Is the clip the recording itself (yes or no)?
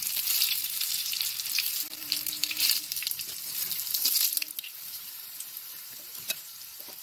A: no